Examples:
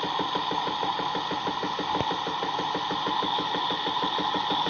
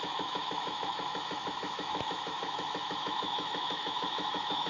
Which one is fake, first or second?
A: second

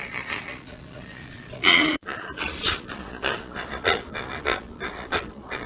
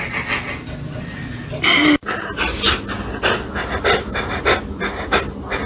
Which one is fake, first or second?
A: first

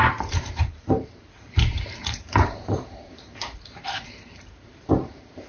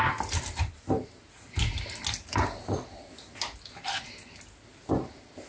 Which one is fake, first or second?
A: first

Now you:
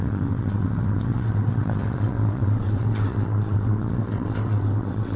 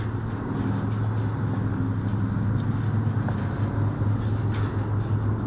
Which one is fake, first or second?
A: first